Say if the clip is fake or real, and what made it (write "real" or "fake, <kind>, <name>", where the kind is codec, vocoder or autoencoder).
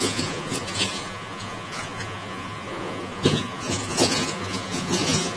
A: fake, vocoder, Vocos